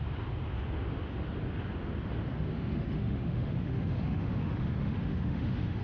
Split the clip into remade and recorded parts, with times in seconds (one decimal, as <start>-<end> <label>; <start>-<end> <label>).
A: 0.0-2.5 recorded; 2.5-5.8 remade